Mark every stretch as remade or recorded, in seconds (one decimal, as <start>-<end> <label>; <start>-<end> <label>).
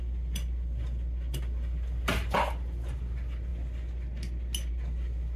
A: 0.0-5.4 recorded